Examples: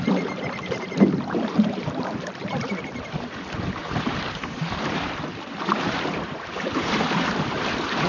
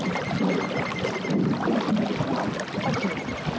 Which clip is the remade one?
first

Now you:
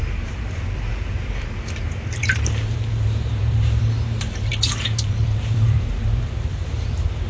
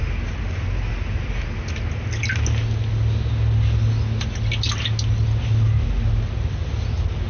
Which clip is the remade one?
first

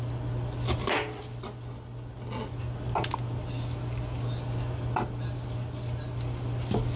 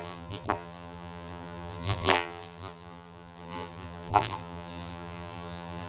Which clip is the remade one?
second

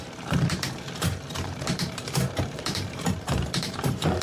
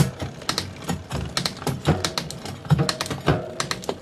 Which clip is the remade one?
first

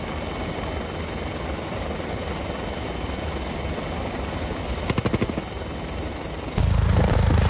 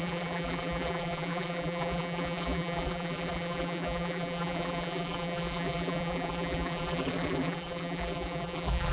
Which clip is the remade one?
second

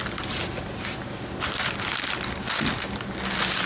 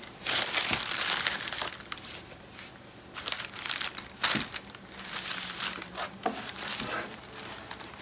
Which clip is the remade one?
second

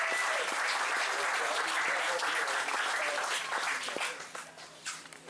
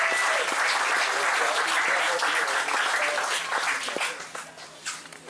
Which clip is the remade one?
first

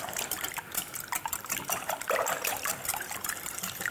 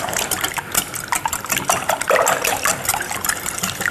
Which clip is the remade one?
first